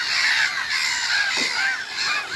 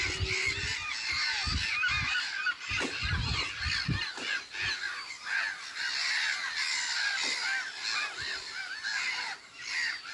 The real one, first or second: second